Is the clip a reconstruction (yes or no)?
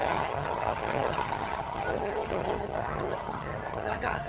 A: yes